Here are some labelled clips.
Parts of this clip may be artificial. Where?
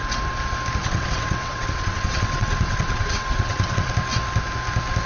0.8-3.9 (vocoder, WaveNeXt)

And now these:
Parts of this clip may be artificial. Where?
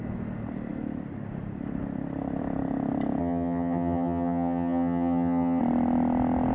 3.2-5.6 (vocoder, HiFi-GAN)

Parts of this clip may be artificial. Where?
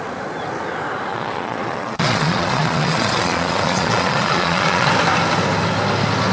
1.1-4.9 (vocoder, Vocos)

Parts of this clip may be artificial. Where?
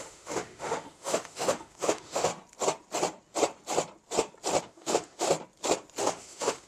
0.0-2.3 (autoencoder, DAC-VAE); 4.6-5.3; 6.0-6.7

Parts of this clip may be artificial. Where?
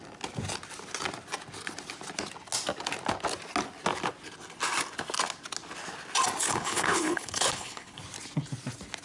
6.5-8.0 (codec, HILCodec)